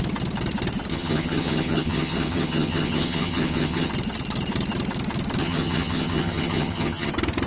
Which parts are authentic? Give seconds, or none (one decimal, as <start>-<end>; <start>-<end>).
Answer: 0.0-0.9; 3.9-5.4; 7.1-7.5